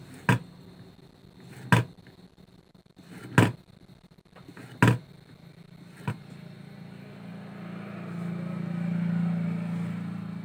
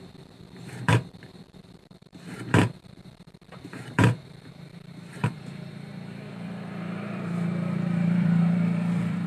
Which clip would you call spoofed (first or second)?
second